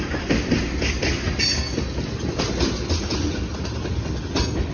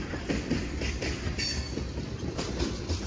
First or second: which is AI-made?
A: second